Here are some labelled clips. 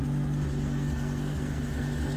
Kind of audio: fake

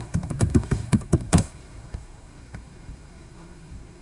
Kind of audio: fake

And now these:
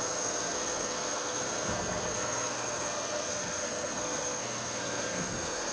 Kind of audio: fake